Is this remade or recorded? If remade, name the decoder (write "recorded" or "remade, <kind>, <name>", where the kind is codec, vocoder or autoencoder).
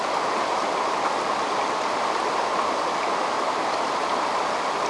recorded